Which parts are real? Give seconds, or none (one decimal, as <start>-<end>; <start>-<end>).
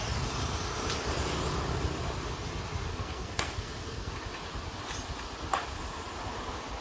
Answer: 0.0-2.9; 4.1-6.8